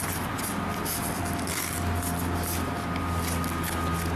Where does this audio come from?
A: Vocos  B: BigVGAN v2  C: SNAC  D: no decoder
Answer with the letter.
D